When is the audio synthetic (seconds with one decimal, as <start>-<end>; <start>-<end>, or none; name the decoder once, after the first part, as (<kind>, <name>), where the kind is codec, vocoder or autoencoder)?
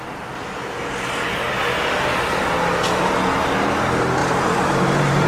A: 4.2-5.3 (vocoder, BigVGAN v2)